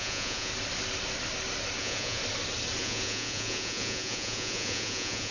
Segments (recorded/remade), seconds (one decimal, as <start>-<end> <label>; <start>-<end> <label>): 0.0-0.5 remade; 0.5-1.8 recorded; 1.8-2.2 remade; 2.2-2.8 recorded; 2.8-5.3 remade